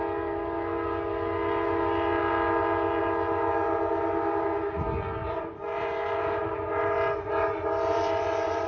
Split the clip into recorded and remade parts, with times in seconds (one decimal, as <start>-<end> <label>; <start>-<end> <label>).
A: 0.0-5.2 recorded; 5.2-8.7 remade